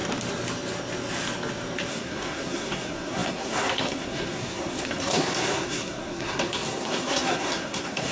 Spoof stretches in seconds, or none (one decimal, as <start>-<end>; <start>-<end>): 1.9-8.1